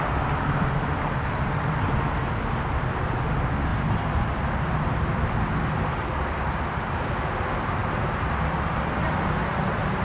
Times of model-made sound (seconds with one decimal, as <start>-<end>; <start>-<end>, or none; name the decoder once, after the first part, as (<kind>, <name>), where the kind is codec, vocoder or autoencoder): none